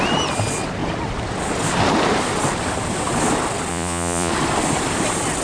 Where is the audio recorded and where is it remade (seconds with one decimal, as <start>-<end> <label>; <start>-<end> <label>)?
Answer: 0.0-3.7 recorded; 3.7-4.3 remade; 4.3-5.4 recorded